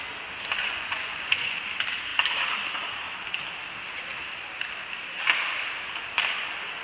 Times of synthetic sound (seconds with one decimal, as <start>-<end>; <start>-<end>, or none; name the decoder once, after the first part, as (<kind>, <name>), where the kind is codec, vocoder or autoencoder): 0.6-1.6 (vocoder, Vocos)